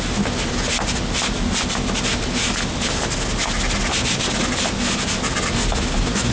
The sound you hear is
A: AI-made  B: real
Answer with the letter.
B